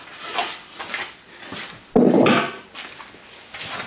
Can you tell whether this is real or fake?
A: real